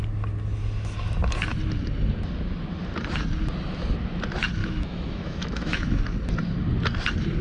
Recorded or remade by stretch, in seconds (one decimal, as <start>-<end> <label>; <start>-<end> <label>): 0.0-4.6 recorded; 4.6-6.0 remade; 6.0-7.4 recorded